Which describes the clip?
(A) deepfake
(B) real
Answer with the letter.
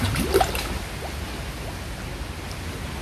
B